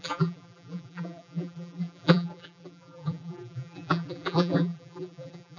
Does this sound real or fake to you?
fake